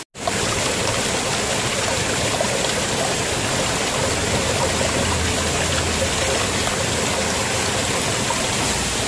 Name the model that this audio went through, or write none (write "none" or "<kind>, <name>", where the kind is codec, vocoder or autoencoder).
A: none